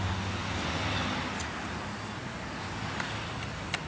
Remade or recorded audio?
recorded